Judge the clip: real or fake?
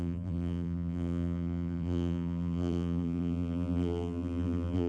fake